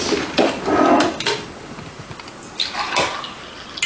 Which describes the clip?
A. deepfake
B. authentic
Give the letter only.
B